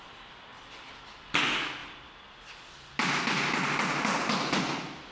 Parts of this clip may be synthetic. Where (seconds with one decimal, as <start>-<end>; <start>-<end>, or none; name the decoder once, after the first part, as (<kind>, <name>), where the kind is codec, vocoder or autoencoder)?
0.5-1.4 (vocoder, BigVGAN v2); 1.8-3.1